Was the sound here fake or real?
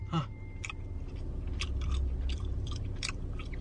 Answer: fake